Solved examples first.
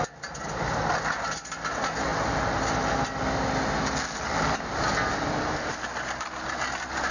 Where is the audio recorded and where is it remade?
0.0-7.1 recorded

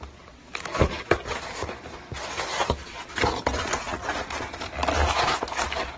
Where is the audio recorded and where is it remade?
0.0-0.4 recorded; 0.4-1.1 remade; 1.1-6.0 recorded

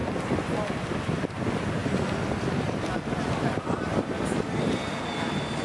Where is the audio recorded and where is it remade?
0.0-5.6 recorded

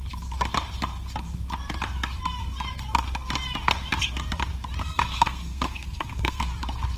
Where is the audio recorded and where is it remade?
0.0-4.8 recorded; 4.8-6.4 remade; 6.4-7.0 recorded

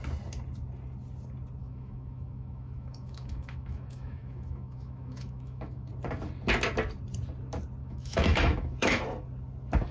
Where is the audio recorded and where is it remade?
0.0-1.6 recorded; 1.6-5.9 remade; 5.9-7.8 recorded; 7.8-9.0 remade; 9.0-9.9 recorded

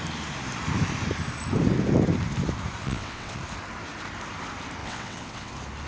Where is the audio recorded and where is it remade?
0.0-2.8 recorded; 2.8-3.4 remade; 3.4-4.8 recorded; 4.8-5.5 remade; 5.5-5.9 recorded